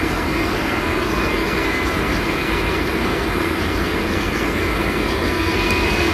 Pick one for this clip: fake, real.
fake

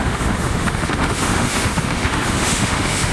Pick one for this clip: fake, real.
fake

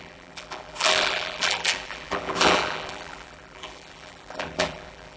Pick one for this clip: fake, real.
fake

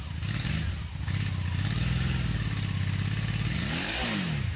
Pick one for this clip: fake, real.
real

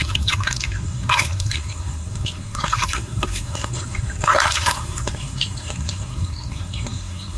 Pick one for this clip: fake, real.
fake